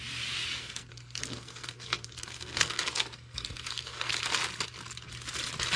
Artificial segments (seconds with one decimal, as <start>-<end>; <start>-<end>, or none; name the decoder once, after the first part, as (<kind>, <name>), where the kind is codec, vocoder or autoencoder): 0.6-4.1 (codec, SNAC)